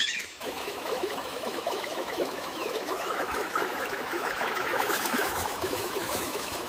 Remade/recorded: remade